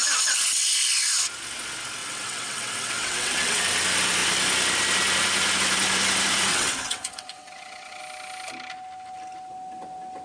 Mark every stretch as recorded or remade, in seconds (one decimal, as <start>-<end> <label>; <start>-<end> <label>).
0.0-2.0 recorded; 2.0-3.6 remade; 3.6-6.5 recorded; 6.5-8.0 remade; 8.0-10.2 recorded